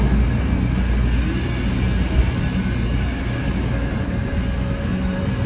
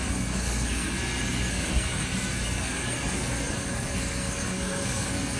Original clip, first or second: first